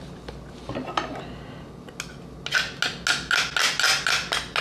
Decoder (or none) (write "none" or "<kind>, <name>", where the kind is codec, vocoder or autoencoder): none